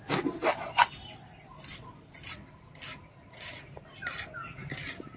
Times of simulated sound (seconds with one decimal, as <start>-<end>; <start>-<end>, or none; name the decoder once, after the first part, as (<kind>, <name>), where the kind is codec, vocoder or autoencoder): none